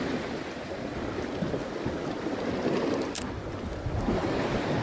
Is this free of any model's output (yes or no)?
yes